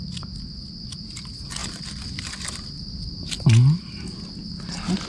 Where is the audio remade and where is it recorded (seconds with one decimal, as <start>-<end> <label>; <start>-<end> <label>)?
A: 0.0-5.1 recorded